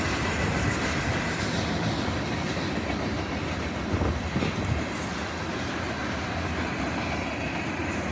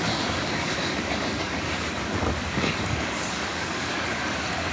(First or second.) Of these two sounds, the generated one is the second